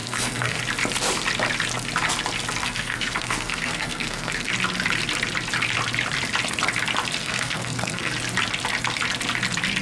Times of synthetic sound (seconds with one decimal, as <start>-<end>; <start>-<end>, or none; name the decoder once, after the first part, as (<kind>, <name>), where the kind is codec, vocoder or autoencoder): 0.0-0.6 (codec, SNAC); 2.6-4.5; 7.2-8.1